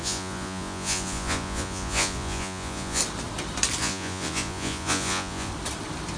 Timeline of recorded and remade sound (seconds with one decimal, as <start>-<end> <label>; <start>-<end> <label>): 0.0-3.0 remade; 3.0-3.8 recorded; 3.8-5.5 remade; 5.5-6.2 recorded